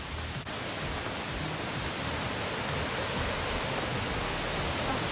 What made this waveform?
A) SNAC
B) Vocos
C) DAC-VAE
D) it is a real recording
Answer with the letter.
D